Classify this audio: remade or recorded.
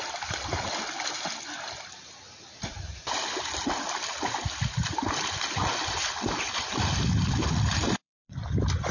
remade